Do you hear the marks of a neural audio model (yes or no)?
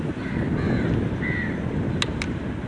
no